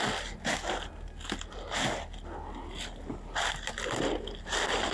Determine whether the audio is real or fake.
real